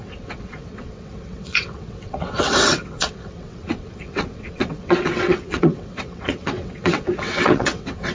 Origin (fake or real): fake